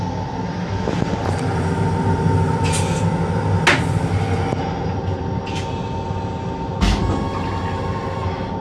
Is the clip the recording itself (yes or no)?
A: yes